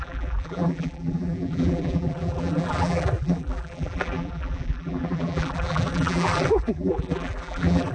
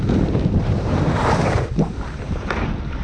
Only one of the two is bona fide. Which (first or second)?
second